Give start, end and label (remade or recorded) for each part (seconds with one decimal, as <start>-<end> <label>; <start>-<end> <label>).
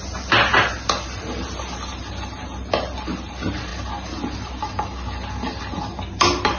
0.0-6.6 recorded